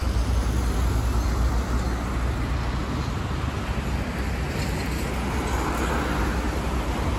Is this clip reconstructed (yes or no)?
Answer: no